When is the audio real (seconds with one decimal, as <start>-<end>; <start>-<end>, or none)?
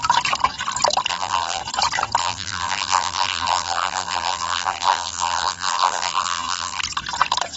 0.0-1.1; 1.6-2.2; 6.8-7.6